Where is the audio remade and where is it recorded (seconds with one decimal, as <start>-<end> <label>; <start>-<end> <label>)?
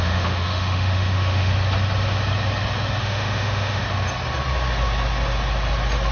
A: 0.0-1.5 remade; 1.5-3.0 recorded; 3.0-3.8 remade; 3.8-6.1 recorded